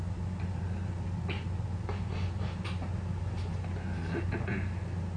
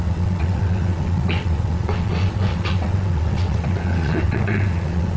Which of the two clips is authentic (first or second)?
first